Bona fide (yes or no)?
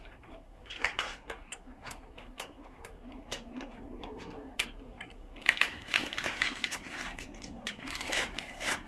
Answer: no